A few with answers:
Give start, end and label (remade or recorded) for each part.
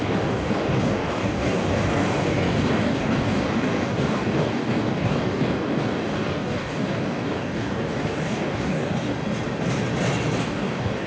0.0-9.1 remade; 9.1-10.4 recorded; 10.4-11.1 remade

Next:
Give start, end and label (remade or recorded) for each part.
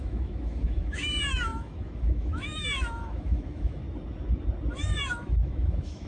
0.0-3.8 remade; 3.8-4.7 recorded; 4.7-6.1 remade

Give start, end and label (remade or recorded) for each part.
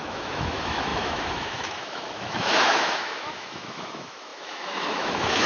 0.0-5.5 remade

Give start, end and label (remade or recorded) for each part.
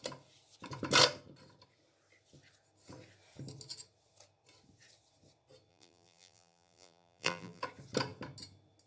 0.0-5.7 recorded; 5.7-7.6 remade; 7.6-8.9 recorded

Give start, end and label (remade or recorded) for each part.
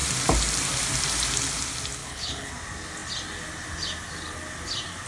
0.0-2.0 recorded; 2.0-2.5 remade; 2.5-5.1 recorded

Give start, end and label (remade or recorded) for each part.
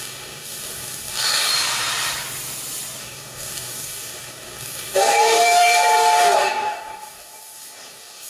0.0-1.5 remade; 1.5-3.0 recorded; 3.0-8.3 remade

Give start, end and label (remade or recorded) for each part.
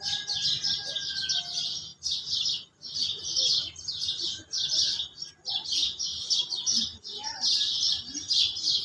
0.0-8.8 recorded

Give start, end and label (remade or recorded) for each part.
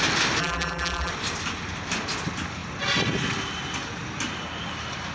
0.0-0.4 recorded; 0.4-1.1 remade; 1.1-5.1 recorded